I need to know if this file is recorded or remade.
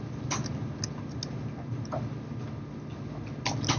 recorded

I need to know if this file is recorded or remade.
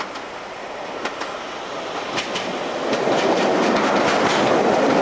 recorded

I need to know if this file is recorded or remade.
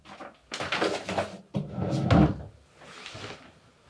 recorded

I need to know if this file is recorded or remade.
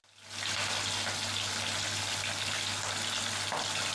recorded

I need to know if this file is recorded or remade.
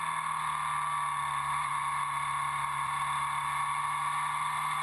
recorded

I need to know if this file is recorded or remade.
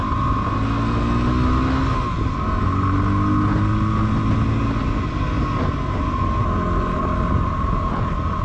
recorded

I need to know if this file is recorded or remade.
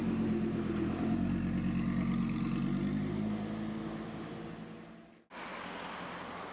recorded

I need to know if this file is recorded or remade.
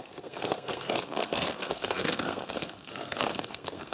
remade